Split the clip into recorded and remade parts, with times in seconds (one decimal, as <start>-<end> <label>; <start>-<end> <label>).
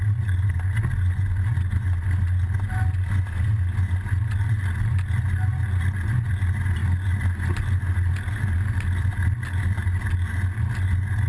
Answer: 0.0-11.3 recorded